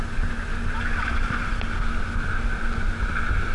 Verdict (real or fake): real